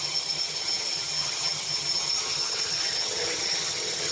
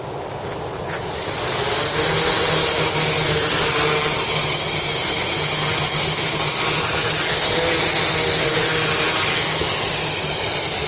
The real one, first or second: second